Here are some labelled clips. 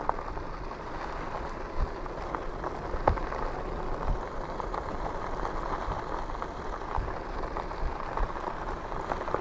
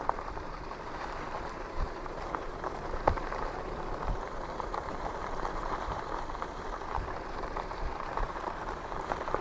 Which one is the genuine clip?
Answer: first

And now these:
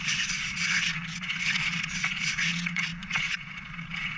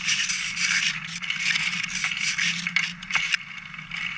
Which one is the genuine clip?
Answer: second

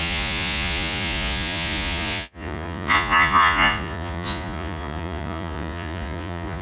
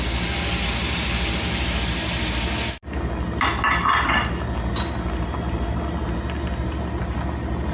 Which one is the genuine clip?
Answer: second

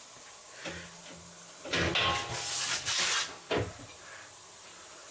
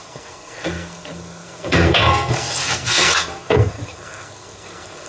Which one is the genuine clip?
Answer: first